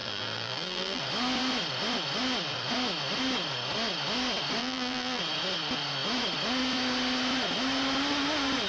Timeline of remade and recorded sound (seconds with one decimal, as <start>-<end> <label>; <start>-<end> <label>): 0.0-1.0 remade; 1.0-4.6 recorded; 4.6-5.2 remade; 5.2-8.7 recorded